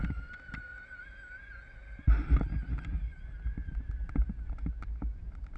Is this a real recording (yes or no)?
yes